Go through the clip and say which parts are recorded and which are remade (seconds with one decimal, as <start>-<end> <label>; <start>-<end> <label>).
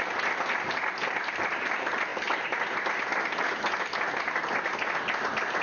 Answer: 0.0-5.6 recorded